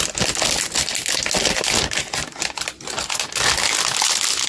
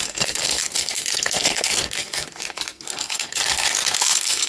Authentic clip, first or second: first